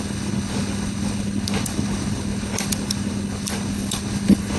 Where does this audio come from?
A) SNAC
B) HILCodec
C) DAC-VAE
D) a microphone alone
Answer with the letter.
B